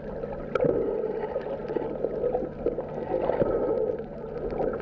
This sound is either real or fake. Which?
real